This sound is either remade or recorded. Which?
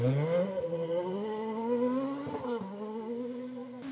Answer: recorded